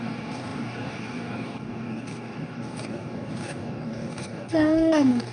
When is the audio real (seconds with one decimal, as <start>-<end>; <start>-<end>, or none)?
none